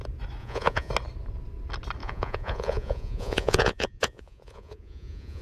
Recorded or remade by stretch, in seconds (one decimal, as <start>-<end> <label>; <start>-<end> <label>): 0.0-0.4 recorded; 0.4-0.9 remade; 0.9-2.0 recorded; 2.0-5.4 remade